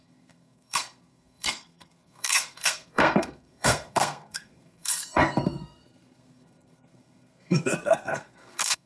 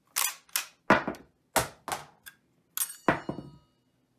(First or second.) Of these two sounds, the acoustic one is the second